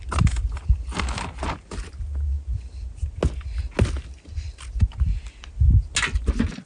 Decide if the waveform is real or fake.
real